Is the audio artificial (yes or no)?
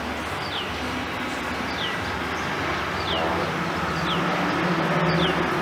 no